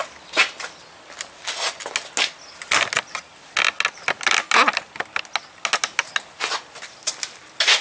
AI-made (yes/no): no